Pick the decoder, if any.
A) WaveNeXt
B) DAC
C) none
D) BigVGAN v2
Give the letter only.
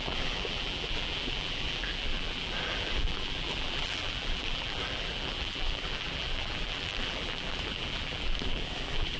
D